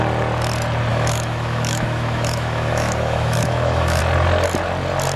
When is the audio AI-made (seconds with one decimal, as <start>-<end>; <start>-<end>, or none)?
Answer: 0.9-4.0